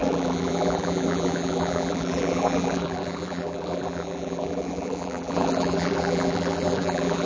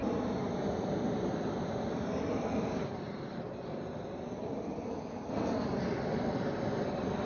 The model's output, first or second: first